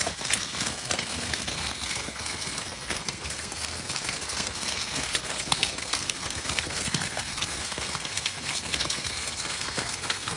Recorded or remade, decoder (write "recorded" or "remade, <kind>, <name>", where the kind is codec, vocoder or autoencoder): remade, codec, SNAC